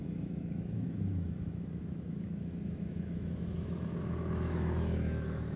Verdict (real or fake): fake